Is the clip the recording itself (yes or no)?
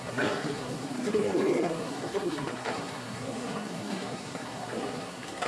no